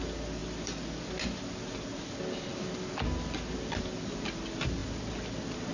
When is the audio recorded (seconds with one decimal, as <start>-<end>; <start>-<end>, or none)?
0.0-5.7